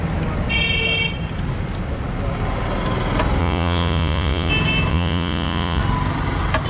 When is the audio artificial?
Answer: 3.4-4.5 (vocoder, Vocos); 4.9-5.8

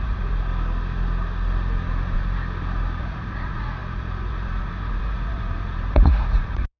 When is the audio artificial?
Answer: 0.0-0.5 (vocoder, Vocos); 3.0-6.8

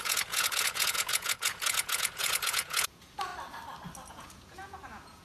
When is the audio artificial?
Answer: 0.0-3.3 (vocoder, Vocos); 4.1-5.2

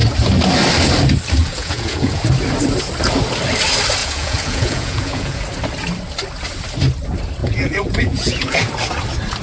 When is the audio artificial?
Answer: 1.4-2.2 (vocoder, Vocos); 4.0-5.4; 7.4-8.7

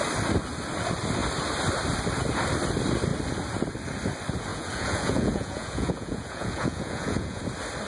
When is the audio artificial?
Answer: 4.5-7.4 (vocoder, Vocos)

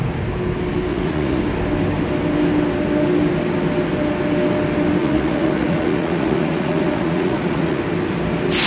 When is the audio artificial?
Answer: 0.9-1.4 (vocoder, Vocos); 5.0-7.8

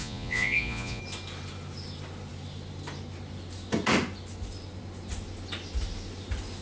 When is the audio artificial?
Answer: 0.0-1.0 (vocoder, Vocos)

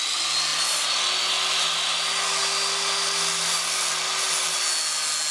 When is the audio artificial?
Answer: none